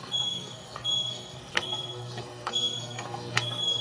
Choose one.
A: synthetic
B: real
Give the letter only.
A